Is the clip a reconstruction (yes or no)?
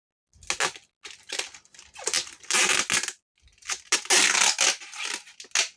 no